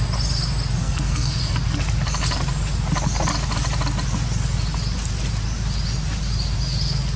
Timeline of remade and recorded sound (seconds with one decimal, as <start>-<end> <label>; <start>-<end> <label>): 0.0-0.8 recorded; 0.8-1.4 remade; 1.4-7.2 recorded